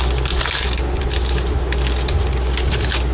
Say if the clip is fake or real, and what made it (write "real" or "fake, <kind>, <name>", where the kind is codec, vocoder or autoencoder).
real